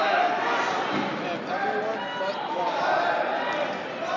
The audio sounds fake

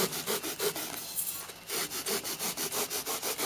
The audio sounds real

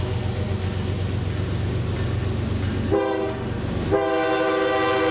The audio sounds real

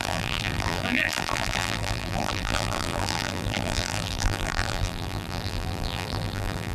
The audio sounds fake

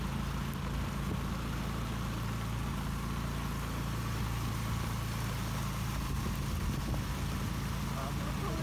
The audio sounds real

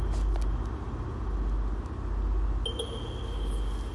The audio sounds real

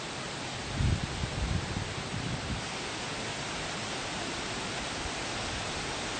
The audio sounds fake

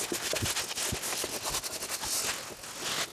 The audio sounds real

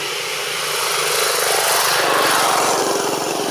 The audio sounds real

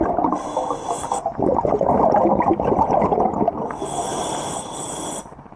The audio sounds fake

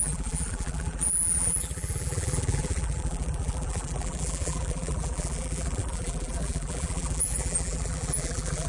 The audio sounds fake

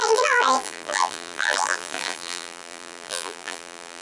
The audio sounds fake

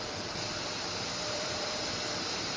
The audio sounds fake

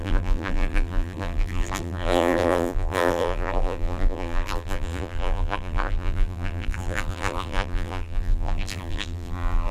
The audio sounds fake